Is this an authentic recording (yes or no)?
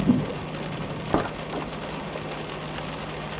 yes